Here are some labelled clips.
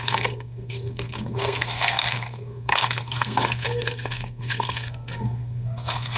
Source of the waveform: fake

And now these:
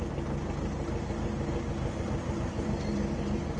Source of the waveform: real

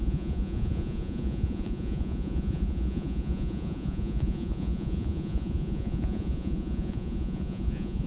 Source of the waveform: fake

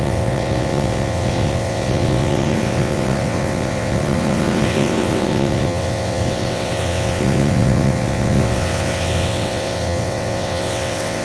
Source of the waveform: fake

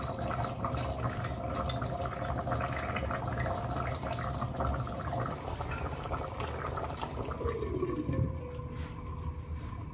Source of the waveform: real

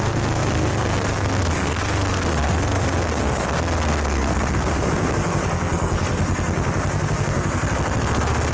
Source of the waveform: fake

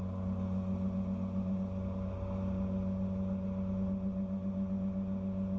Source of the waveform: real